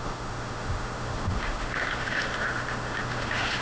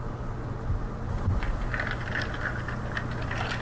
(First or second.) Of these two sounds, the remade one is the first